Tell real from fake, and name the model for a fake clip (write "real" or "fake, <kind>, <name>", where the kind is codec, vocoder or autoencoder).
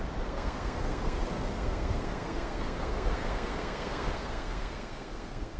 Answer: fake, codec, SNAC